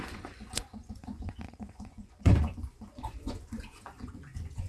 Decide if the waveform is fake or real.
fake